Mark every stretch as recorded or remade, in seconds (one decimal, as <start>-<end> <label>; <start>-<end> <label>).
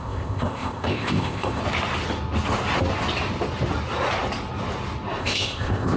0.0-1.6 remade; 1.6-5.2 recorded; 5.2-6.0 remade